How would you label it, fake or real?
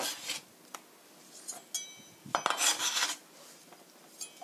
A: real